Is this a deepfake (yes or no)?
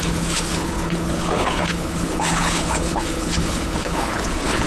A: yes